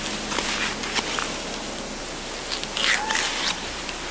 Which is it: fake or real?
real